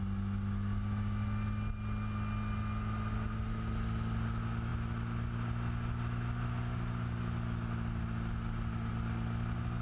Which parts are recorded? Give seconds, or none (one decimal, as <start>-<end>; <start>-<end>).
0.0-9.8